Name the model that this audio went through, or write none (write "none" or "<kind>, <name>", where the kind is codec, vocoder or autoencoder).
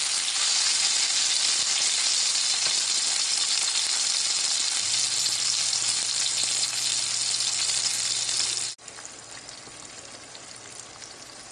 none